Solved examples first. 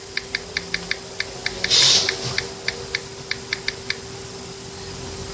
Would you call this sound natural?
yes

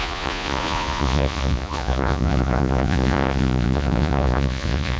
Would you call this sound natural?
no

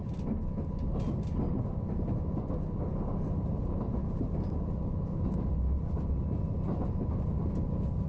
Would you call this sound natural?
yes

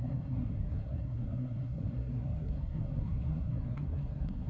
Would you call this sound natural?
no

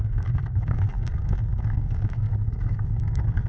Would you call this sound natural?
no